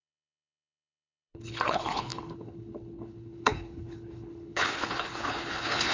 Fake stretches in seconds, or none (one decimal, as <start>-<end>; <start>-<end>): 0.0-5.9